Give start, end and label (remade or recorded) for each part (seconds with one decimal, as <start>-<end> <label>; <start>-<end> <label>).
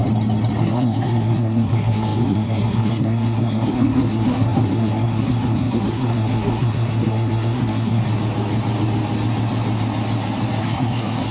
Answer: 0.0-0.6 recorded; 0.6-8.0 remade; 8.0-10.6 recorded; 10.6-11.3 remade